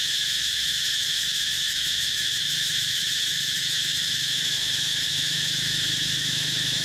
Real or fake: fake